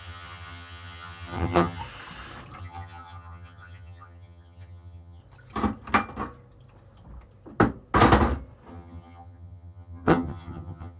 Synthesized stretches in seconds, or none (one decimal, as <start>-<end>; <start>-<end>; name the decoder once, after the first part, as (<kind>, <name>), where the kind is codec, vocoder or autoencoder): 0.0-1.8 (vocoder, HiFi-GAN); 2.6-5.2; 8.7-11.0